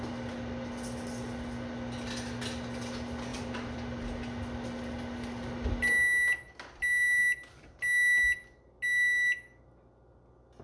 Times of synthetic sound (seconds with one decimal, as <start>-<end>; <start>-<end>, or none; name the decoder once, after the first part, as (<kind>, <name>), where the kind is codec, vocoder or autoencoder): 3.3-4.0 (vocoder, BigVGAN v2)